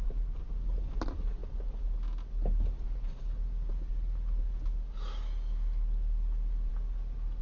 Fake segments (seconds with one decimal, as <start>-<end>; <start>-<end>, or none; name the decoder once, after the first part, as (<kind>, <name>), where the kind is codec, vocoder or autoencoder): none